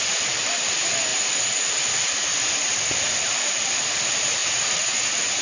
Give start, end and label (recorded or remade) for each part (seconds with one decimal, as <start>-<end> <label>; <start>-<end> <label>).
0.0-4.4 recorded; 4.4-5.4 remade